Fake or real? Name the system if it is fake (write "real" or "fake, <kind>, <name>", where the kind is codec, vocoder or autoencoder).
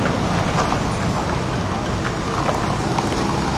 real